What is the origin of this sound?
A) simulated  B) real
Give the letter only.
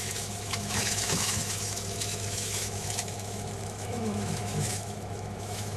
A